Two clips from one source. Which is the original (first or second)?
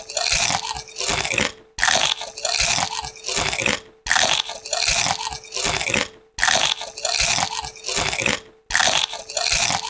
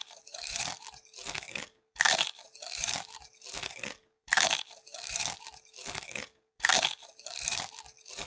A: first